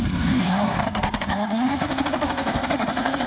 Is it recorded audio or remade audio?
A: remade